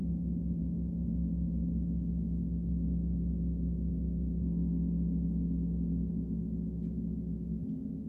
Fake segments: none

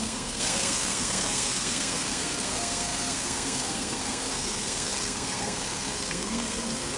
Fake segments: 0.0-7.0 (codec, SNAC)

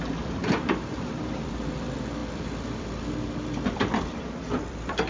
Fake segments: 0.0-5.1 (vocoder, BigVGAN v2)

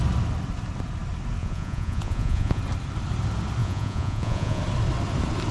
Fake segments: 1.4-2.6 (vocoder, Vocos); 3.6-4.6